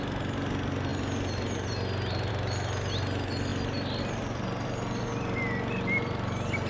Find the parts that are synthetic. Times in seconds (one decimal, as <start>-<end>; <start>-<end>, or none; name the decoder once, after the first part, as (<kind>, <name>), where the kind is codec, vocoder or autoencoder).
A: none